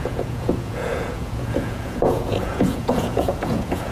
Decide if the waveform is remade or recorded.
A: remade